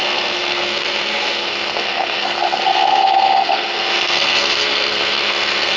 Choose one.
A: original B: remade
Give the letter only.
B